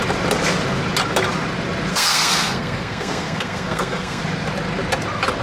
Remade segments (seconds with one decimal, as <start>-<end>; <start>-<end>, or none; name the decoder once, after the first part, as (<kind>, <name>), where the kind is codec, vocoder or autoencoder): 1.9-4.2 (codec, SNAC)